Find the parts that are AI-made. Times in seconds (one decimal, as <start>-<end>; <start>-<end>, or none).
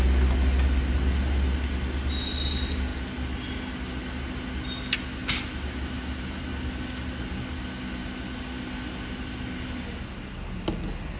none